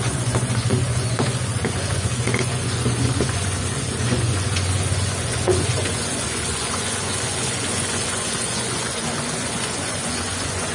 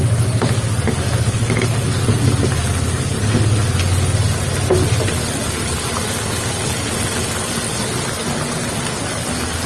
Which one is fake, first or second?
first